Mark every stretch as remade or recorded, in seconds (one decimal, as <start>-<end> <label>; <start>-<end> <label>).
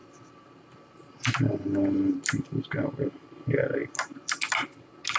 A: 0.0-2.1 remade; 2.1-3.8 recorded; 3.8-4.4 remade; 4.4-5.2 recorded